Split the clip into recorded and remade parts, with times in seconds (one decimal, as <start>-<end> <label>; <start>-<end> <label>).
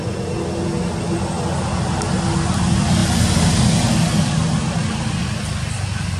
0.0-6.2 recorded